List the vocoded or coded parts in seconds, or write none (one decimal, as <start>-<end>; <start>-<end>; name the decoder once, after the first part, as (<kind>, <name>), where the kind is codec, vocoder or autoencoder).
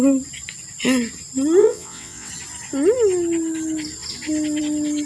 1.6-2.3 (vocoder, WaveNeXt)